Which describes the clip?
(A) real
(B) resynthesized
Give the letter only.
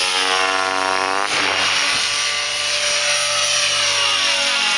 A